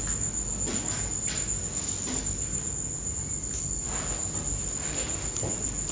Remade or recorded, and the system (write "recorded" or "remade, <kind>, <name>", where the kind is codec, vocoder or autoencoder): recorded